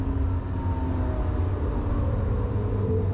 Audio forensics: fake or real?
real